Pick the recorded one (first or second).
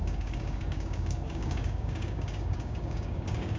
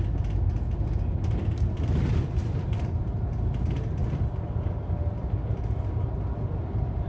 second